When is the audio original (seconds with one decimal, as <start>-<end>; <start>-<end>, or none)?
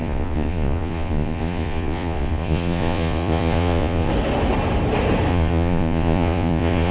4.1-5.3